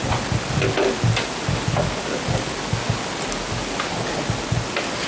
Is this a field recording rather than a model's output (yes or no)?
yes